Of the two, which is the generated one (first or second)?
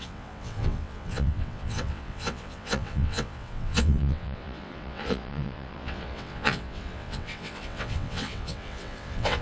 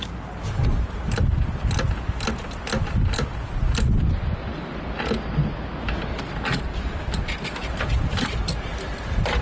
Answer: first